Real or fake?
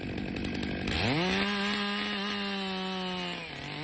real